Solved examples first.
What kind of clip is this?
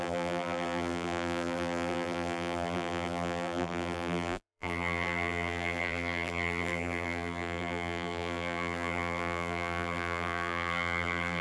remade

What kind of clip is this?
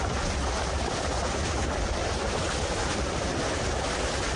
recorded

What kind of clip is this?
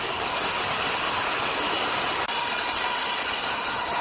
recorded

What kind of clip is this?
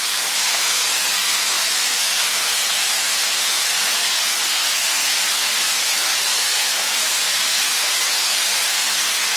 remade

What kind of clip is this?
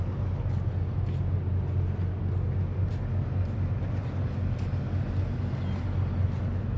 recorded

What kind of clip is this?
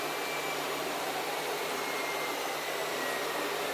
recorded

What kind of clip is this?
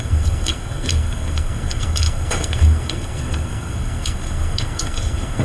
remade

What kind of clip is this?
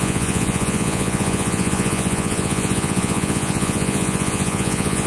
remade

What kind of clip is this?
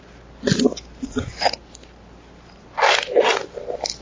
recorded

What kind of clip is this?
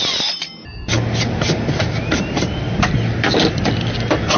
recorded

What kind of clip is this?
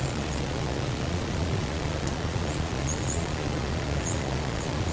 remade